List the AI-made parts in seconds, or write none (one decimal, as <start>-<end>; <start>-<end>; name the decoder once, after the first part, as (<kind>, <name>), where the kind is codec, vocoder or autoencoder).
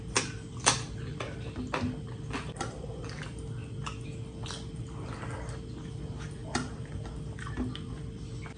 6.4-7.1 (vocoder, BigVGAN v2)